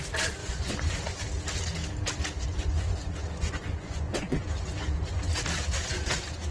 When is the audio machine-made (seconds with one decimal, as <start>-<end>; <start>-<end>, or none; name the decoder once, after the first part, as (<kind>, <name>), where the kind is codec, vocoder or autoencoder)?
0.4-1.2 (vocoder, Vocos); 2.5-5.3